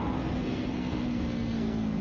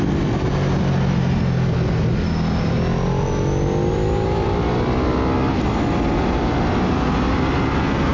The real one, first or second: second